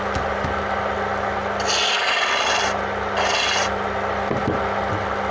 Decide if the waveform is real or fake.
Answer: real